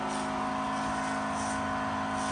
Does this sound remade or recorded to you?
recorded